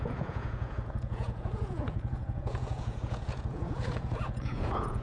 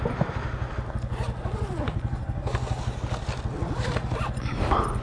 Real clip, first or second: second